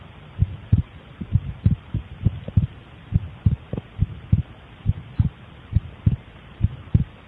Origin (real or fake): real